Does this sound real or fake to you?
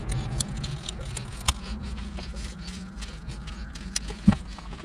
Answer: real